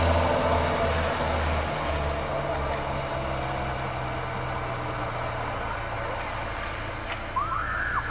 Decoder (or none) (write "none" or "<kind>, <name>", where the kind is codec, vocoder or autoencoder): none